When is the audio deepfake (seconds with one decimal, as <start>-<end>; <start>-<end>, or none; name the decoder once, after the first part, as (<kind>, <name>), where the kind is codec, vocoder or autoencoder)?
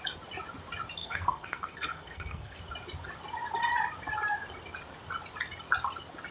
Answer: 1.0-2.6 (codec, SNAC)